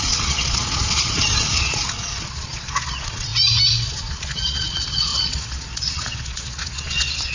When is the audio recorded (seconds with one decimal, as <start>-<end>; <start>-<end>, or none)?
3.3-3.9